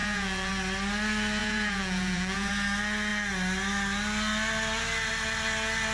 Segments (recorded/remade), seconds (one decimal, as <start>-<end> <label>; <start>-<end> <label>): 0.0-0.5 remade; 0.5-1.4 recorded; 1.4-2.5 remade; 2.5-5.9 recorded